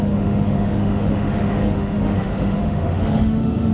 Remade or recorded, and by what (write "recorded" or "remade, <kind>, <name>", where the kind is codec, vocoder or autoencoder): remade, autoencoder, DAC-VAE